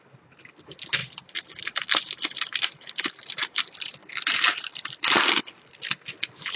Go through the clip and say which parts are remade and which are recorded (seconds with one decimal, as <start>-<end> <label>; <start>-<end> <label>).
0.0-1.0 remade; 1.0-2.4 recorded; 2.4-6.6 remade